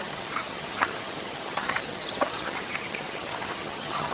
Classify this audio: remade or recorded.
remade